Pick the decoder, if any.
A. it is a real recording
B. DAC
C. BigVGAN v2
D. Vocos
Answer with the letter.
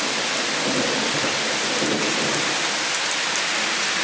A